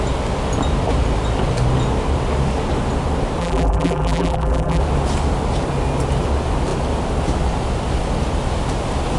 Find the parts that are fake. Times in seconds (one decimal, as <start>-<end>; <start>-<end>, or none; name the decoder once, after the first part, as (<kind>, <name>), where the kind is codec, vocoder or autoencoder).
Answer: 3.4-4.8 (vocoder, BigVGAN v2)